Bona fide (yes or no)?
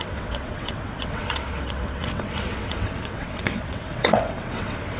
no